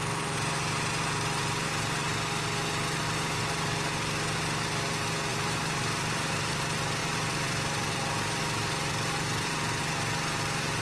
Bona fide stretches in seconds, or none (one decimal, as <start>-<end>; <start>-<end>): 0.0-5.3; 6.5-7.0; 9.8-10.8